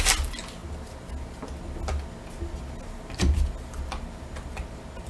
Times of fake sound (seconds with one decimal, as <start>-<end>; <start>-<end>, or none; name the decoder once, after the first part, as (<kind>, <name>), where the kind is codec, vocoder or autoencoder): none